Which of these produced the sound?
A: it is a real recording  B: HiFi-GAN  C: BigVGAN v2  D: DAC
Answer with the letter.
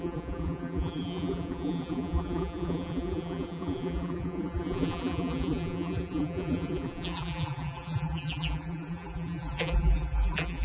C